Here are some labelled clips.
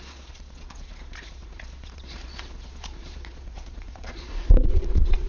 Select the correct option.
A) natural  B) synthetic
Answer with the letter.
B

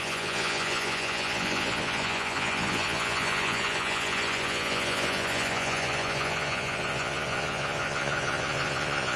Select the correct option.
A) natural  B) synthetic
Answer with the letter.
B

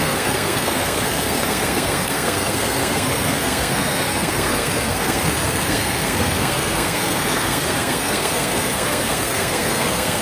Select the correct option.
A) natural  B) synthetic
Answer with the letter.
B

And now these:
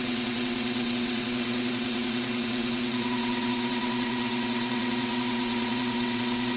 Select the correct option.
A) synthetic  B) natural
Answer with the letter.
A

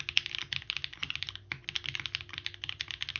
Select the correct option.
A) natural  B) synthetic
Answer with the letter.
A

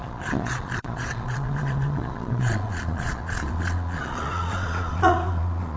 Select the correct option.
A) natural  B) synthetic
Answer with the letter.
B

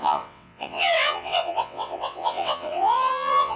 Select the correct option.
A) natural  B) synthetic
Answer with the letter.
B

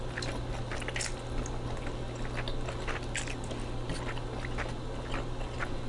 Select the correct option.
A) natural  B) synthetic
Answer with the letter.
A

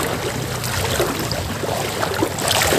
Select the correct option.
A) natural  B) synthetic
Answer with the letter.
A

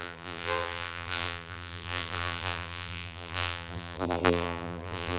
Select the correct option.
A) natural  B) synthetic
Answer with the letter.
B